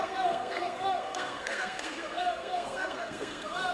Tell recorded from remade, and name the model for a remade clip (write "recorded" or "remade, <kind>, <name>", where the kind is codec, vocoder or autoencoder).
remade, codec, SNAC